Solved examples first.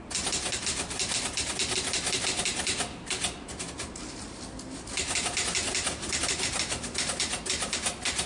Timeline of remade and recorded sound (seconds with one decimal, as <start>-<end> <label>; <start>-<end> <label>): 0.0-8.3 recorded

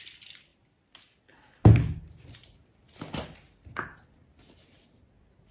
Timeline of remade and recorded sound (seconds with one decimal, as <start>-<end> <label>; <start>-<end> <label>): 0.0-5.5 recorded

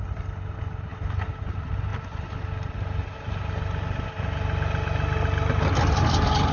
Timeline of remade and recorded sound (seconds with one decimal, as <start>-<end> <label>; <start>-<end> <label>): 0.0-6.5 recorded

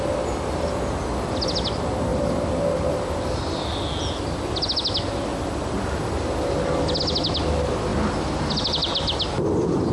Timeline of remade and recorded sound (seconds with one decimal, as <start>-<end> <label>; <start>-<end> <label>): 0.0-9.9 recorded

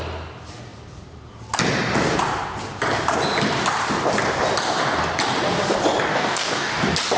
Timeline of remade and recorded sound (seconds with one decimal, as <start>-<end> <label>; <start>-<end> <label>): 0.0-6.1 recorded; 6.1-6.8 remade; 6.8-7.2 recorded

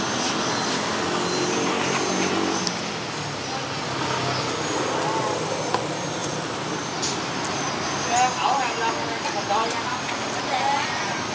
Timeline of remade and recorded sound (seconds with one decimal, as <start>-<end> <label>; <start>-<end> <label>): 0.0-11.3 recorded